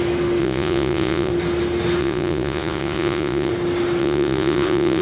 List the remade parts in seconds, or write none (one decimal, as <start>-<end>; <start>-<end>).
0.4-1.3; 2.0-3.5; 4.0-5.0